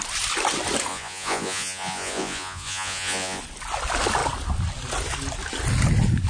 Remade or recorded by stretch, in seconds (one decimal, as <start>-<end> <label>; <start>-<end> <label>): 0.0-0.9 recorded; 0.9-3.4 remade; 3.4-6.3 recorded